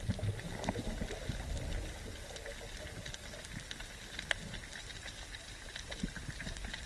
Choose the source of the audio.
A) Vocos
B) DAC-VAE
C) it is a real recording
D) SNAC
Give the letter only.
C